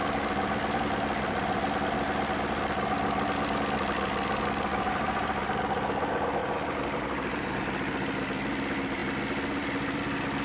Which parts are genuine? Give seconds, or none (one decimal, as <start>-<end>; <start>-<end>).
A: 0.0-6.4; 7.5-10.4